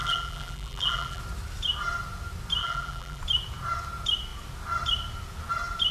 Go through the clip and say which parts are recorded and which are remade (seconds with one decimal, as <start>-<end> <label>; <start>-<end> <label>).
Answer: 0.0-1.2 remade; 1.2-2.6 recorded; 2.6-3.2 remade; 3.2-5.9 recorded